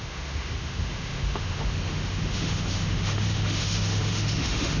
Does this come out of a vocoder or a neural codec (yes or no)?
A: yes